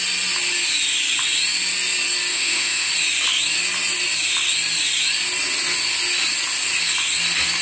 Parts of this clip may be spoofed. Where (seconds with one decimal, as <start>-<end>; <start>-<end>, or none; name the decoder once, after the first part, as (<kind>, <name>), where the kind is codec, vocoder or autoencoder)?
2.3-2.9 (autoencoder, DAC-VAE)